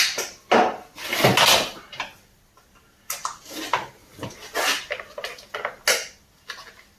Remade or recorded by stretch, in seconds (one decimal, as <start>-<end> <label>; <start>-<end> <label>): 0.0-7.0 recorded